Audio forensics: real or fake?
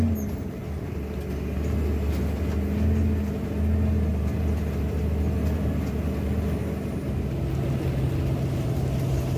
real